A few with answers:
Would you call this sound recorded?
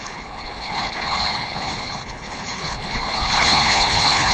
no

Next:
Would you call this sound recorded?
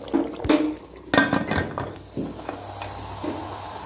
yes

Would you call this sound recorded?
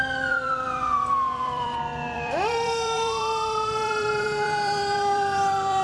no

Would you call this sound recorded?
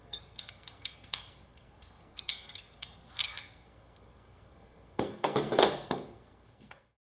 no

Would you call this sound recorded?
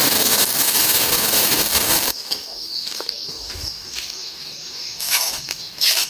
no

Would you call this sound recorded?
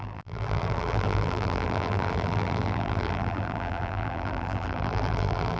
no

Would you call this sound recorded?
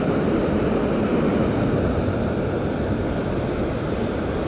yes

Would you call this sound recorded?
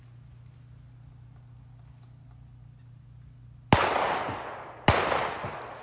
yes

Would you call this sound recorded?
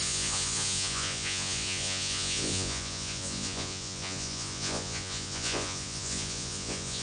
no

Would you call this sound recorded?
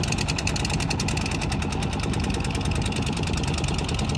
yes